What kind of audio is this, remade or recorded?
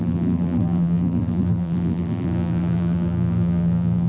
remade